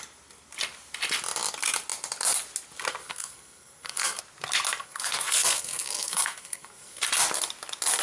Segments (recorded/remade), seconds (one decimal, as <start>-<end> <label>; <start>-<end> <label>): 0.0-3.0 recorded; 3.0-4.2 remade; 4.2-4.8 recorded; 4.8-7.0 remade; 7.0-8.0 recorded